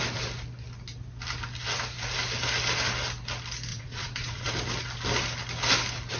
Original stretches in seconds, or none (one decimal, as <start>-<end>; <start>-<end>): 0.0-3.7; 4.5-6.2